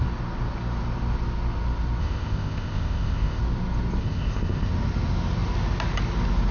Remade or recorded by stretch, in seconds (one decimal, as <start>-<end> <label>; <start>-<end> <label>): 0.0-2.0 recorded; 2.0-3.4 remade; 3.4-4.0 recorded; 4.0-4.7 remade; 4.7-6.5 recorded

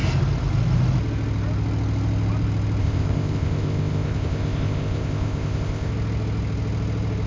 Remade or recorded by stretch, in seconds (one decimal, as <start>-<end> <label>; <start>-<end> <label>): 0.0-2.8 recorded; 2.8-5.9 remade; 5.9-7.3 recorded